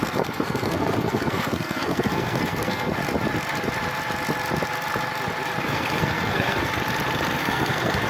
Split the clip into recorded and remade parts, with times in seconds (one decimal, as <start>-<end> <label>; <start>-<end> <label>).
0.0-3.0 remade; 3.0-5.6 recorded; 5.6-6.7 remade; 6.7-7.4 recorded; 7.4-8.1 remade

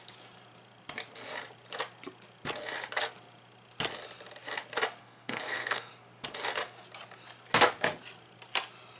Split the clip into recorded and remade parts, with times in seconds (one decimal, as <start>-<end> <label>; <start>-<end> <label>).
0.0-5.0 recorded; 5.0-5.9 remade; 5.9-9.0 recorded

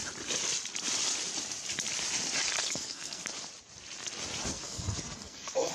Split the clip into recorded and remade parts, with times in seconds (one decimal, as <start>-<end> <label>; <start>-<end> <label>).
0.0-2.6 recorded; 2.6-3.3 remade; 3.3-4.5 recorded; 4.5-5.7 remade